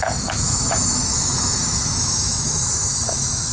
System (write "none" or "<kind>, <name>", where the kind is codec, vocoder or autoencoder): autoencoder, DAC-VAE